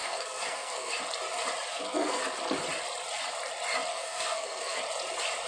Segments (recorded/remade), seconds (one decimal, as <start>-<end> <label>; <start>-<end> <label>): 0.0-0.9 remade; 0.9-1.7 recorded; 1.7-2.2 remade; 2.2-3.9 recorded; 3.9-4.8 remade; 4.8-5.5 recorded